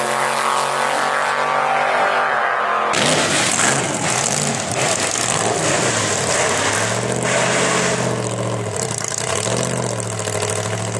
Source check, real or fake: real